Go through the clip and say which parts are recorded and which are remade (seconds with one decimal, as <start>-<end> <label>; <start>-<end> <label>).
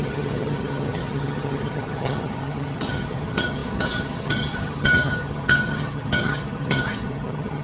0.0-7.6 remade